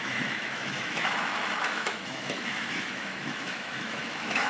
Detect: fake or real fake